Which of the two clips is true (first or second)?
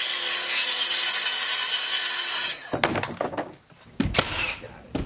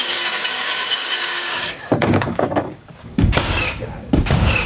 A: first